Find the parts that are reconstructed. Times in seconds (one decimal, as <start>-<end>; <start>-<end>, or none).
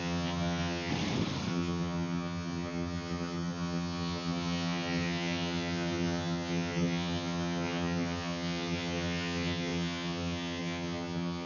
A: 0.0-0.9; 1.5-11.5